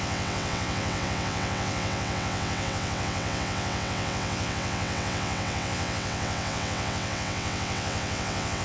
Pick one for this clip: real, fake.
fake